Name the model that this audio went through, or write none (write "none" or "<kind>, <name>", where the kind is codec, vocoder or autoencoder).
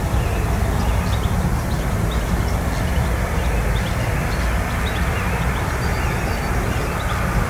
none